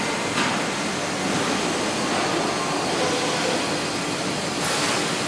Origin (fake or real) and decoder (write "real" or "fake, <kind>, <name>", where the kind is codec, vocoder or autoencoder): real